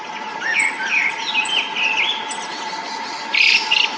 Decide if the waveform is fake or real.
real